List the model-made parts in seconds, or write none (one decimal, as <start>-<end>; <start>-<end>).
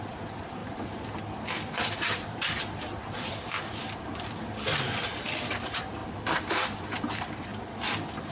0.0-7.5